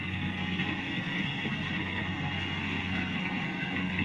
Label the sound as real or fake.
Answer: fake